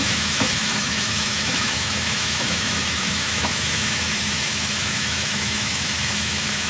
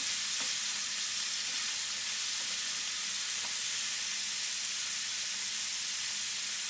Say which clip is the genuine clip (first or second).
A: second